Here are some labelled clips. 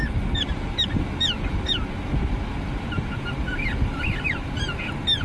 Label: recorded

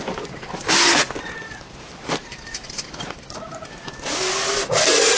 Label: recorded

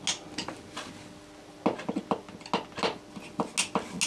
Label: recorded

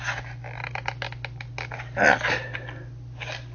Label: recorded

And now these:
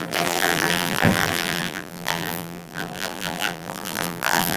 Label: remade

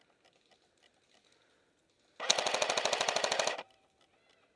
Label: recorded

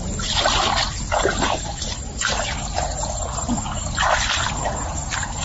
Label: recorded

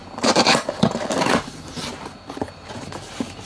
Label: remade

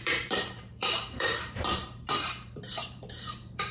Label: remade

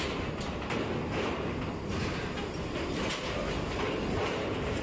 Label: recorded